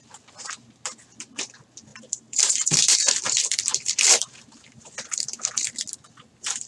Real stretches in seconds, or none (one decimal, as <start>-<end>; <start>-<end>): 0.0-1.9; 4.8-6.7